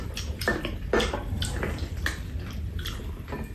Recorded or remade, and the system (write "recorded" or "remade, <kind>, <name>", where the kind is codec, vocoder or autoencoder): recorded